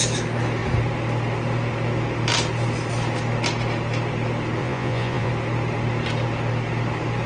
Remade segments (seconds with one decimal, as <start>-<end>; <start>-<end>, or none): 4.6-5.3